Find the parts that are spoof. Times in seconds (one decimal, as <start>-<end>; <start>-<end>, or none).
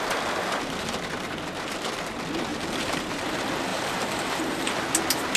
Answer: 2.5-3.2; 3.7-4.7